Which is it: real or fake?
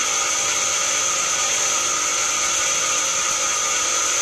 real